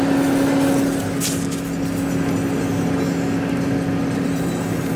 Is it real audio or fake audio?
real